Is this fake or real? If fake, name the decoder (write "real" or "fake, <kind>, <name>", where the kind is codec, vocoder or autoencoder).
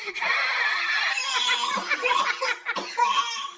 real